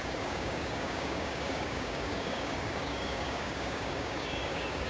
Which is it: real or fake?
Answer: fake